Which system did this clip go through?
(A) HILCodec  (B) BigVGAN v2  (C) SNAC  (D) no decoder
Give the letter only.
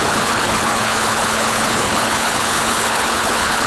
A